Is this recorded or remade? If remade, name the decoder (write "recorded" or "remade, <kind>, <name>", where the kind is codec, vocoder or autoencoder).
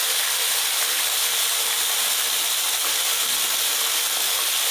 recorded